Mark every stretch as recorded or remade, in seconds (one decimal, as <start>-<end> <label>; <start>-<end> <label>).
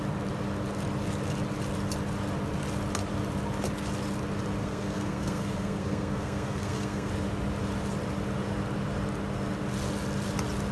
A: 0.0-4.6 recorded; 4.6-7.1 remade; 7.1-10.7 recorded